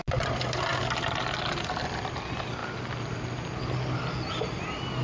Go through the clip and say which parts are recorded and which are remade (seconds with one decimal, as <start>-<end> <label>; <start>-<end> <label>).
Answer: 0.0-5.0 recorded